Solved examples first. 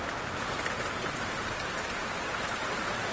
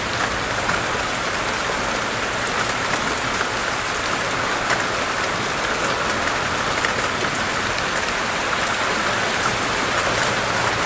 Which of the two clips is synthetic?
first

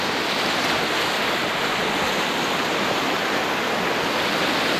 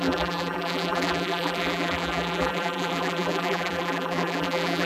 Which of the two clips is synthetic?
second